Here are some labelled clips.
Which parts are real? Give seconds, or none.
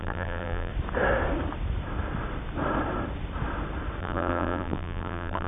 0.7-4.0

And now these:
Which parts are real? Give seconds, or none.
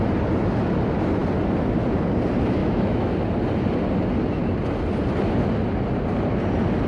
0.0-2.6; 3.1-6.9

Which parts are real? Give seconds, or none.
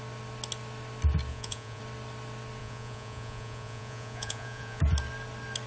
0.0-1.3; 1.8-2.6; 4.8-5.7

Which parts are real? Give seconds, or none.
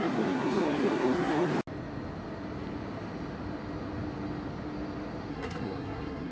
1.5-5.3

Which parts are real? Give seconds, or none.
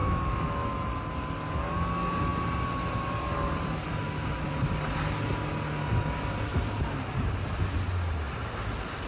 0.9-3.9; 4.5-9.1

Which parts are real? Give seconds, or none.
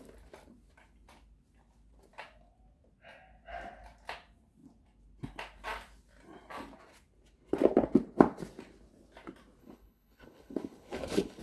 0.0-9.6